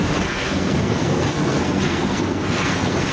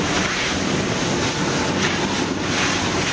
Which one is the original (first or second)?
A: second